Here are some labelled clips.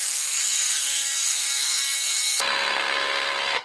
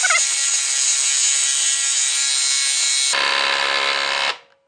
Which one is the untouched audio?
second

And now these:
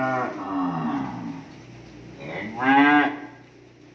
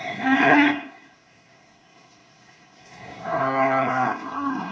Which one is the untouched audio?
first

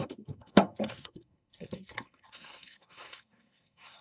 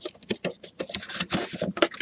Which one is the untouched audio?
second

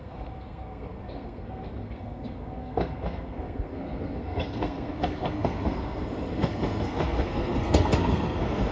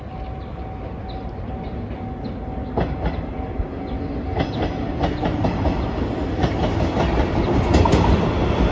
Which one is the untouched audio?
second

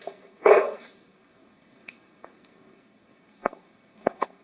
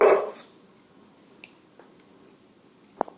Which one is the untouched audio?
second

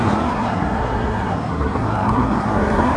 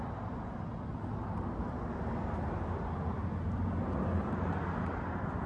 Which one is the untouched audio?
second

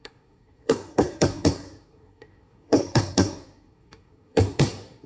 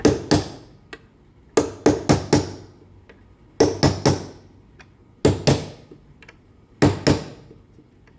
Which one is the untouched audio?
second